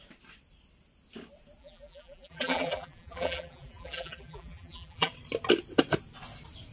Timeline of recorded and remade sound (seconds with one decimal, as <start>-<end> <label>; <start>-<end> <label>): 0.0-1.6 recorded; 1.6-5.1 remade; 5.1-6.7 recorded